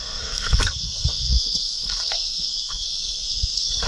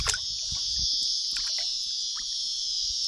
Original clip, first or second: second